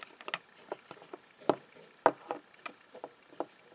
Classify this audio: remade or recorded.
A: recorded